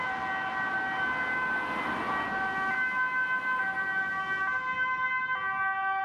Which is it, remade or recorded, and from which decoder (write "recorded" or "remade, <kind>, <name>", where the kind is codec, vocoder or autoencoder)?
recorded